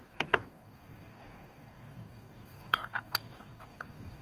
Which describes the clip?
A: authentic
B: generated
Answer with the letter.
B